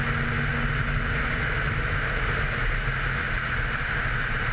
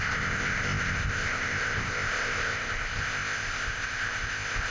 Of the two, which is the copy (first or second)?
second